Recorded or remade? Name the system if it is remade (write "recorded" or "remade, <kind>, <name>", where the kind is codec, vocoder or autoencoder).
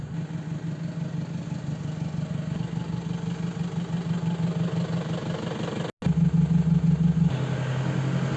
recorded